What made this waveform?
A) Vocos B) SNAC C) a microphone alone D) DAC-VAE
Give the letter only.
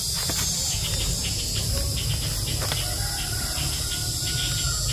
C